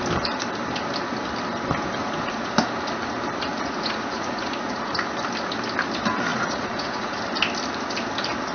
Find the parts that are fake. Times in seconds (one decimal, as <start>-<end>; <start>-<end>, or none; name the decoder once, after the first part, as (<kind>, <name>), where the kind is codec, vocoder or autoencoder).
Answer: 2.0-2.5 (vocoder, Vocos); 3.5-4.9; 6.3-7.2